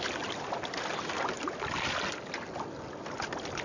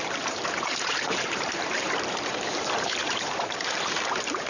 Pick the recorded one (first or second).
first